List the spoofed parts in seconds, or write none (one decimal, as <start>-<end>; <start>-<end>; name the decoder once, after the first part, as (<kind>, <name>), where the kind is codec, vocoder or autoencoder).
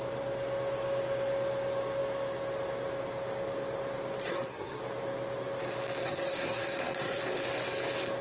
4.3-4.8 (codec, SNAC); 6.0-7.2